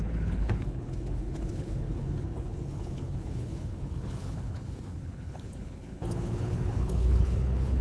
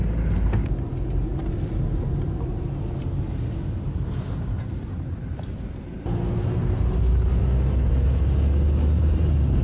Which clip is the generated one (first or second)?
first